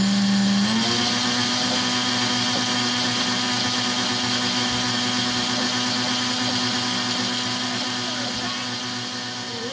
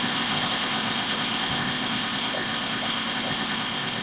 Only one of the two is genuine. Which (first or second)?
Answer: first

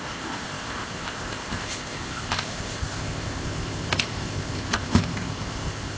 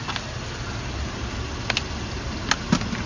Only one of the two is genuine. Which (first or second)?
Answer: second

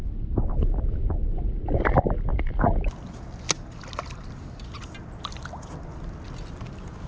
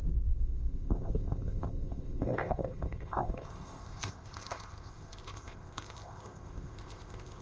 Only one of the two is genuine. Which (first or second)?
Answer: first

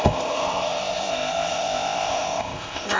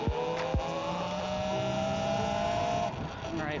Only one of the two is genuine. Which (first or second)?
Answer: second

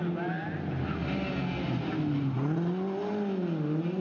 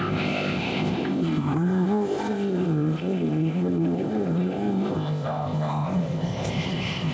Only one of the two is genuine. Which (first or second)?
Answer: first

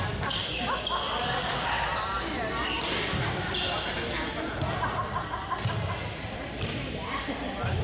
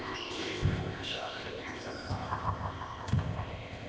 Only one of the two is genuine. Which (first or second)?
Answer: first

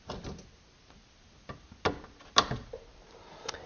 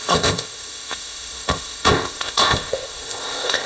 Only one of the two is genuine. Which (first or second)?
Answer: first